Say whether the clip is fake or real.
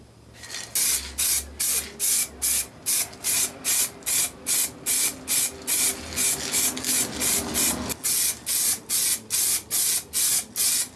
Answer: real